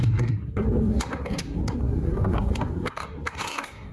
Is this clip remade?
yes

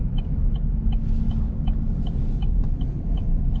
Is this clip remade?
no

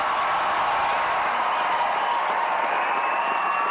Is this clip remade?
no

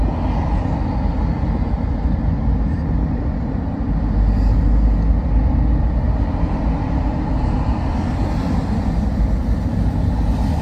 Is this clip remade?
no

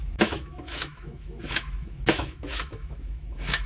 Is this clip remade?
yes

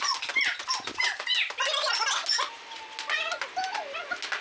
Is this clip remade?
no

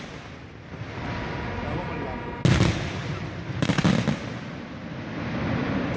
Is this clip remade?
no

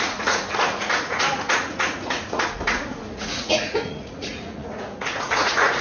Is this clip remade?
yes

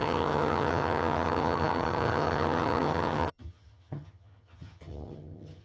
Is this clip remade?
yes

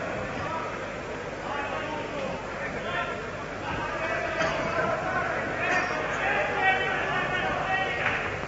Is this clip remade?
no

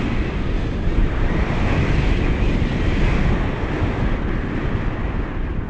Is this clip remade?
no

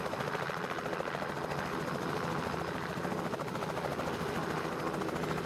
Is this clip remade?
yes